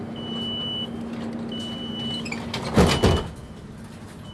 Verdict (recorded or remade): recorded